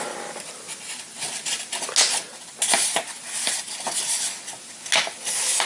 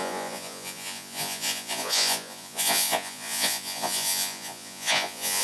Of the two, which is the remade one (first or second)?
second